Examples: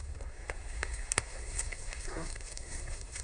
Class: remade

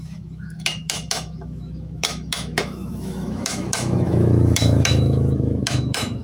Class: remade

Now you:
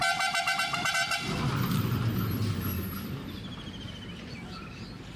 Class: recorded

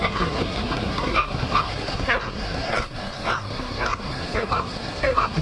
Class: remade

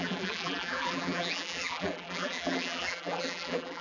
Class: remade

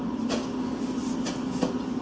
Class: recorded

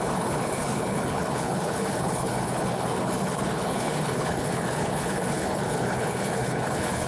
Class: remade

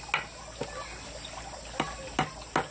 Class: recorded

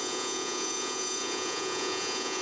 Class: remade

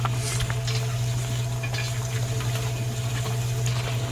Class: recorded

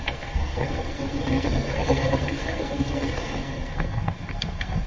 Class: remade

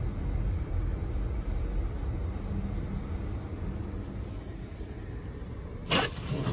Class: recorded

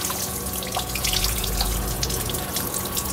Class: remade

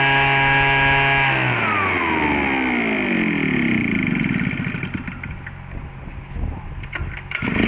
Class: recorded